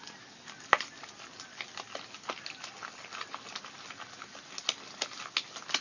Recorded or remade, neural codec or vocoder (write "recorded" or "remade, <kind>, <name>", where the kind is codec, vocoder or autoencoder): recorded